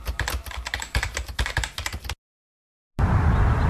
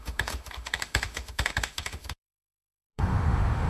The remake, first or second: second